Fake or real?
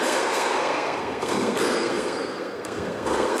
fake